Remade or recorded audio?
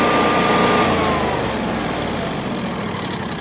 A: recorded